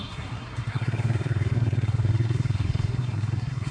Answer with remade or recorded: remade